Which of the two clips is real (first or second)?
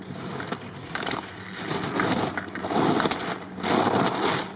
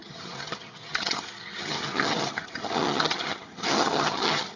first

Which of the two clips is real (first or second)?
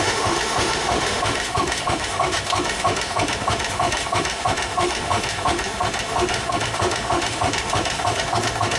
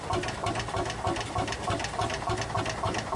second